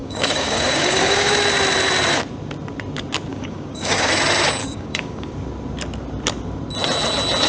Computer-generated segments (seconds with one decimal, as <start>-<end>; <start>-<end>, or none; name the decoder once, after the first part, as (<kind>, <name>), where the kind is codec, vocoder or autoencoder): 0.0-1.3 (codec, DAC); 3.3-4.1; 4.6-5.3

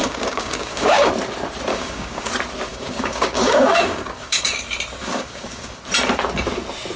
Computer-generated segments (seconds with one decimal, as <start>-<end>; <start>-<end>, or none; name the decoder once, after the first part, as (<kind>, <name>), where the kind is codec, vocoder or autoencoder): 0.0-1.1 (codec, DAC); 1.7-2.3; 2.7-4.6; 5.0-5.8

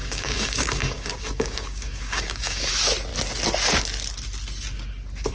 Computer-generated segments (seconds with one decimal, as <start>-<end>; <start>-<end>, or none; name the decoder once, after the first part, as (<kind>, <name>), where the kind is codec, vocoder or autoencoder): 0.0-2.7 (codec, DAC)

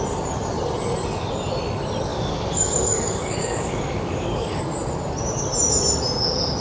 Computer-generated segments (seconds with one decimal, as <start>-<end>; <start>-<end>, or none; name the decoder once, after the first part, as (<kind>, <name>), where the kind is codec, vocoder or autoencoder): 2.1-4.6 (codec, DAC)

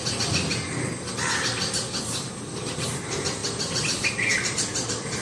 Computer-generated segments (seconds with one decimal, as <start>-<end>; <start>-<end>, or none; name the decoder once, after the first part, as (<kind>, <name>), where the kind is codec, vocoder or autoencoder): none